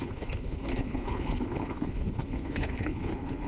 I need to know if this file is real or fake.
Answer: fake